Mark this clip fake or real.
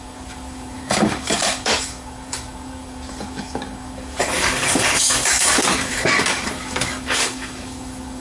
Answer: fake